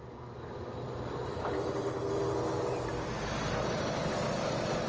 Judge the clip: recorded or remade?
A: recorded